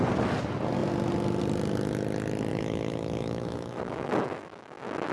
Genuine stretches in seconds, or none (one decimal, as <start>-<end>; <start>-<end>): 0.0-2.5